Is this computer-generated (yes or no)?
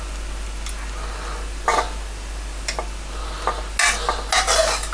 no